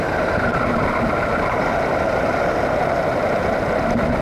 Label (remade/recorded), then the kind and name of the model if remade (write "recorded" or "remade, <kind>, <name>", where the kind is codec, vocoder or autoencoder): recorded